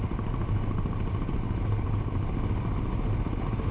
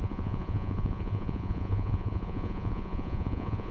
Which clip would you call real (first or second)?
first